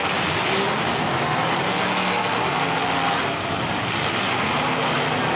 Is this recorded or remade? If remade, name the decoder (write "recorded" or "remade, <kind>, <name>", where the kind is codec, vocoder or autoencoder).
recorded